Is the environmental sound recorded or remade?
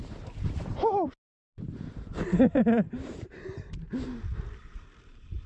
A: remade